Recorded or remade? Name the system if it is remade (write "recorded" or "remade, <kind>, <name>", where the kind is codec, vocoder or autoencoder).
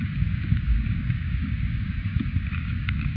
remade, codec, DAC